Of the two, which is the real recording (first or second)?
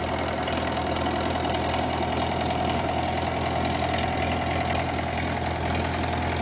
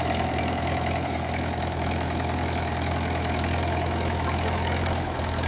first